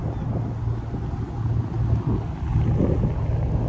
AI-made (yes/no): no